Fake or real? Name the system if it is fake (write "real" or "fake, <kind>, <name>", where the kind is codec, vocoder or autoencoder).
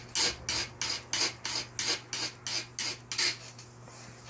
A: real